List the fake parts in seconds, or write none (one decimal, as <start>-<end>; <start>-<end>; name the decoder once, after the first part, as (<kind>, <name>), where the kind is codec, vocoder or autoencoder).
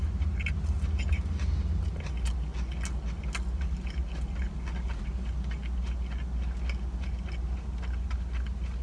none